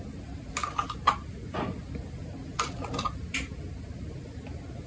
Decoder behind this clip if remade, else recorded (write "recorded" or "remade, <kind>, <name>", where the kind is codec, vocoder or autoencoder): recorded